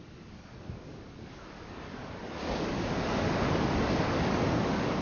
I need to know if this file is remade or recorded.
remade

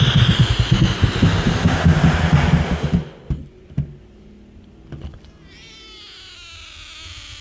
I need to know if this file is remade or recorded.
recorded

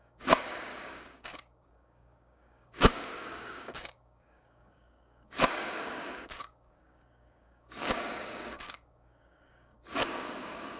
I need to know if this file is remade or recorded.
remade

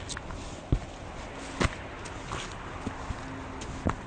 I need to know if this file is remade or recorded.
recorded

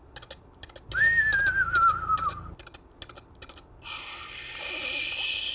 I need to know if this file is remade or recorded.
recorded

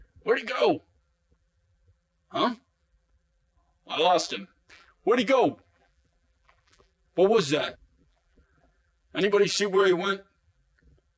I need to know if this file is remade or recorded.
remade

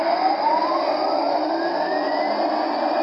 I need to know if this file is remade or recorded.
recorded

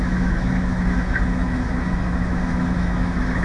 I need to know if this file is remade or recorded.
remade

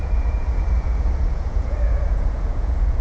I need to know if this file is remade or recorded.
remade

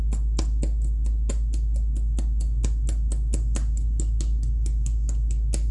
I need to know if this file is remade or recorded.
recorded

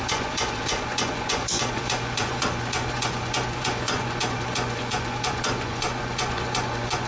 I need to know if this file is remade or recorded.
remade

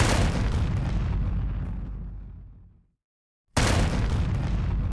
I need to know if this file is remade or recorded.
recorded